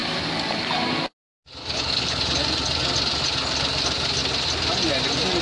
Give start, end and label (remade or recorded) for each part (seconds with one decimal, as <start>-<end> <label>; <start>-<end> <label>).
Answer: 0.0-1.6 recorded; 1.6-2.2 remade; 2.2-5.4 recorded